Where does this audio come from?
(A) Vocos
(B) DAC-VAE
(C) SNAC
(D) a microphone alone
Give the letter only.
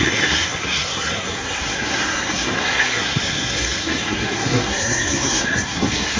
C